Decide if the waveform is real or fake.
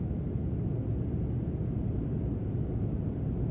real